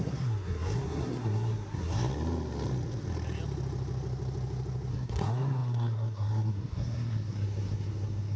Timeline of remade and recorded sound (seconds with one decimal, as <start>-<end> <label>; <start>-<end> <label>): 0.0-2.1 remade; 2.1-4.9 recorded; 4.9-8.4 remade